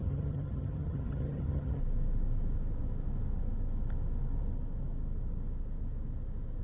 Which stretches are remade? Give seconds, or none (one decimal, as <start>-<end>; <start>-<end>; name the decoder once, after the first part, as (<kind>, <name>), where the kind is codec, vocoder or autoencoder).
0.0-1.8 (vocoder, HiFi-GAN)